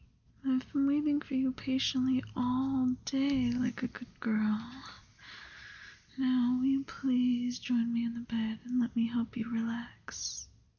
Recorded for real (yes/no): yes